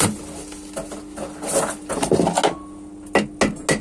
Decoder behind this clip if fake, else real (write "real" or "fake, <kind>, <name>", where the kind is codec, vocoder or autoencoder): real